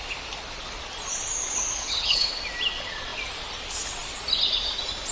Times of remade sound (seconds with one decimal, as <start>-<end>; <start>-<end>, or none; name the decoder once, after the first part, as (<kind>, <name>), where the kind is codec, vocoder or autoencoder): 1.8-2.4 (codec, HILCodec)